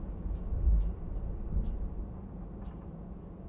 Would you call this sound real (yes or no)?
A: yes